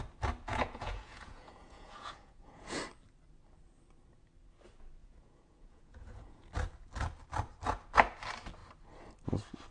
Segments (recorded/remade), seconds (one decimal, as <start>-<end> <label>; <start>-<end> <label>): 0.0-0.5 recorded; 0.5-2.8 remade; 2.8-5.0 recorded; 5.0-6.5 remade; 6.5-9.7 recorded